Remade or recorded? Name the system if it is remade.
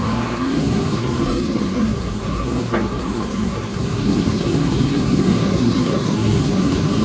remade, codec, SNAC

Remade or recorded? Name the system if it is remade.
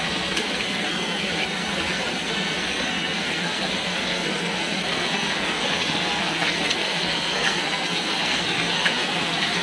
remade, codec, SNAC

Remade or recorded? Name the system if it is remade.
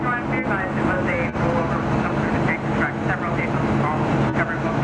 recorded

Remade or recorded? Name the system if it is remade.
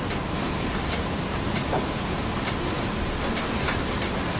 recorded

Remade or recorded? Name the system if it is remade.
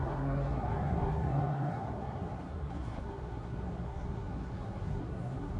remade, codec, SNAC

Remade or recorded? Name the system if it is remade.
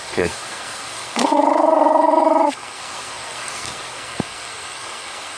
remade, codec, SNAC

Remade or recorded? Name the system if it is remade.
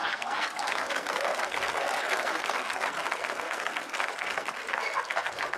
remade, codec, SNAC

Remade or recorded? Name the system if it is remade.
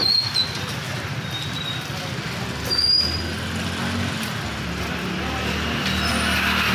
recorded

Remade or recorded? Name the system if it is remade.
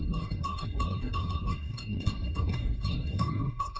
remade, codec, SNAC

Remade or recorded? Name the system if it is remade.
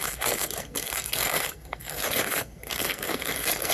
remade, codec, SNAC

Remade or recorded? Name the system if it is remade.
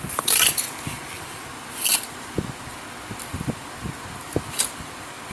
recorded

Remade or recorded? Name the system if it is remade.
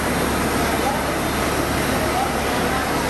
recorded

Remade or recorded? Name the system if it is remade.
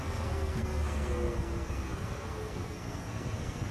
remade, codec, SNAC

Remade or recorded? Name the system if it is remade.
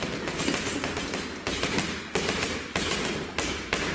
recorded